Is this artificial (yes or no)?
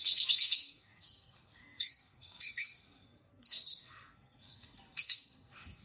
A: yes